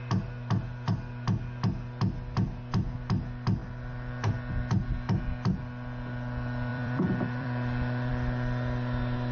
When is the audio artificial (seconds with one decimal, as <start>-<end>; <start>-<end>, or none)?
6.7-8.1